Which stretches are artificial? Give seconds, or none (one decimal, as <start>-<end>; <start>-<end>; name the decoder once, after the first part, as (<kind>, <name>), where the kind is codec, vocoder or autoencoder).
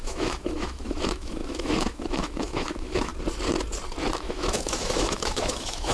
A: 0.0-3.1 (autoencoder, DAC-VAE); 4.2-5.9